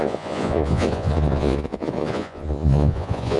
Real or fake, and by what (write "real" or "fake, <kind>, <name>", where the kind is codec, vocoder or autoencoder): fake, vocoder, Vocos